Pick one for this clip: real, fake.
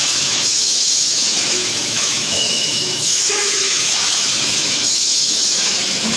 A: fake